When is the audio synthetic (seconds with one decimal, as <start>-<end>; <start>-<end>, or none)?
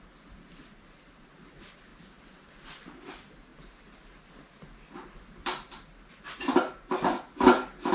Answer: none